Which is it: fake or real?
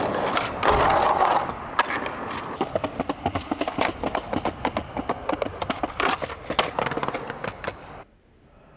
real